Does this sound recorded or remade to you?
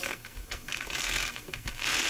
remade